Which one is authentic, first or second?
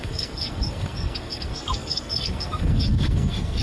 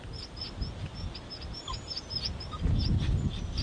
second